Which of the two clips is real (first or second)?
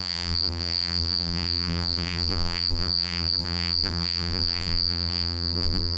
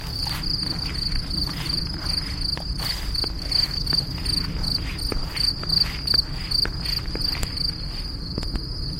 second